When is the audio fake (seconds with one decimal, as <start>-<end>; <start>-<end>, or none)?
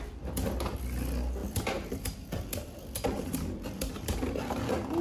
1.4-4.4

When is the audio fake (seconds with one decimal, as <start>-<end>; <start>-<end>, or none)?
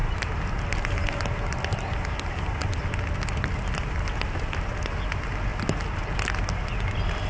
none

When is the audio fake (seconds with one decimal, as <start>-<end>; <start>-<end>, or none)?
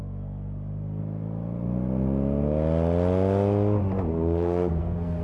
0.0-1.0; 4.1-5.2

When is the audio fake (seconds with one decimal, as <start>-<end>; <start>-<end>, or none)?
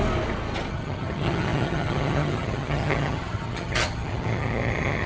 0.7-5.1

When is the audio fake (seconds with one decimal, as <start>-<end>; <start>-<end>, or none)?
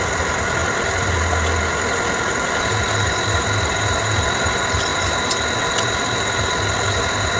0.0-7.4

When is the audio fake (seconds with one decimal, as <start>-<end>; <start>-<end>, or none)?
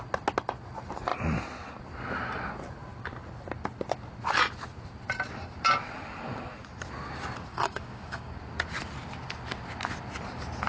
7.5-8.4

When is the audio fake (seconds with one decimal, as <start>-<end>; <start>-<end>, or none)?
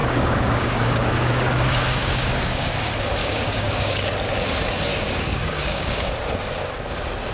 0.0-2.7; 3.2-4.1; 4.9-6.1